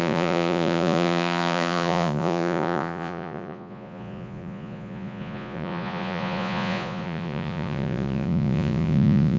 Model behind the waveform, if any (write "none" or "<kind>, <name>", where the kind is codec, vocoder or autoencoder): vocoder, Vocos